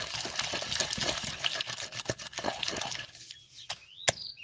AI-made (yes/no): no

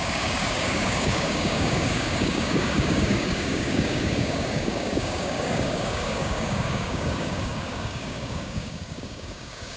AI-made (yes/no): yes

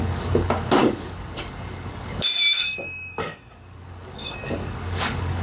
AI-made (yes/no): yes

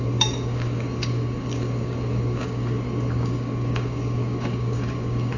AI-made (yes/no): yes